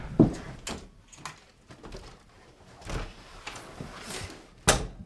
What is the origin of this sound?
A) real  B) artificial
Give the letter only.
A